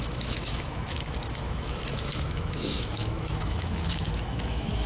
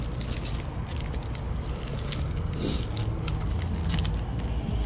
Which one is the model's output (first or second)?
first